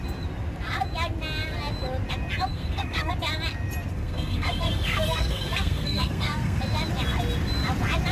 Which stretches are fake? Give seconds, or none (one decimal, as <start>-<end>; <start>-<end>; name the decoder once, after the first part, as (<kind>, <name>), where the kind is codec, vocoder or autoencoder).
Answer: 2.5-3.1 (codec, SNAC); 3.9-6.6